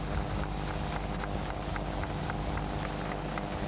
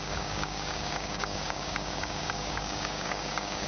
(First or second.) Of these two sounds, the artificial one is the second